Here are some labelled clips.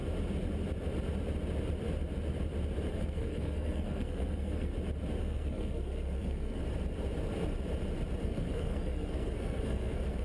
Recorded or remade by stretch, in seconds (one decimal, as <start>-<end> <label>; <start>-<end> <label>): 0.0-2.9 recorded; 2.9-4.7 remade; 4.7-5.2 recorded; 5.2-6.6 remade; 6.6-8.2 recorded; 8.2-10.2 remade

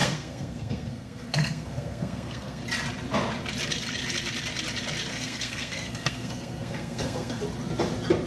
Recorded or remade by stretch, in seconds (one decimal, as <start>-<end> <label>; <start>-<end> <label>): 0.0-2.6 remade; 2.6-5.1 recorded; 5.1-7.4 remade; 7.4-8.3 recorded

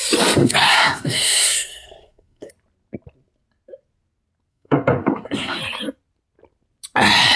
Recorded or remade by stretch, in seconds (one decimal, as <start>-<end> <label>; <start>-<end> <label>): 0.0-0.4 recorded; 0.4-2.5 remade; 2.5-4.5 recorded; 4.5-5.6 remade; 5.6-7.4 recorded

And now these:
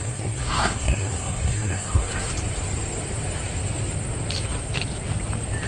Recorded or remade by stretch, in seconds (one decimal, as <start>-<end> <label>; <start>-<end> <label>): 0.0-2.3 remade; 2.3-5.7 recorded

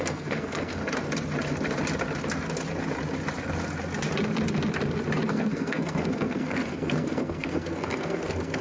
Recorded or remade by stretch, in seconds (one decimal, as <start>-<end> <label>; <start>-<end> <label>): 0.0-0.8 remade; 0.8-5.3 recorded; 5.3-8.6 remade

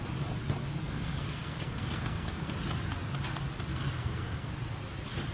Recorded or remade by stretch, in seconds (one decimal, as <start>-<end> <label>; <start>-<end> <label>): 0.0-0.8 recorded; 0.8-2.5 remade; 2.5-3.7 recorded; 3.7-4.5 remade; 4.5-5.3 recorded